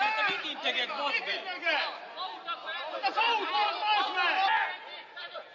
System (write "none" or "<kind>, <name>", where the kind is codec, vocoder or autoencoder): none